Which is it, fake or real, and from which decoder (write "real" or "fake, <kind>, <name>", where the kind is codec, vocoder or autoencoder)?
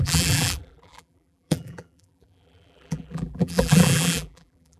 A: fake, vocoder, BigVGAN v2